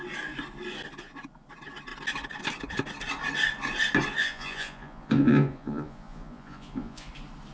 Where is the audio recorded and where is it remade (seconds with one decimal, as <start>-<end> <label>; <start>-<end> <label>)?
0.0-4.2 recorded; 4.2-7.1 remade; 7.1-7.5 recorded